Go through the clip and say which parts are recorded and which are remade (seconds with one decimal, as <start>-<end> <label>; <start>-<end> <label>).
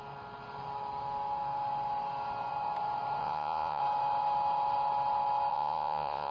0.0-3.2 recorded; 3.2-3.8 remade; 3.8-5.5 recorded; 5.5-6.3 remade